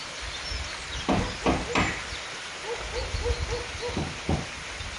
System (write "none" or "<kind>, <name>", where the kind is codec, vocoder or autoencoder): none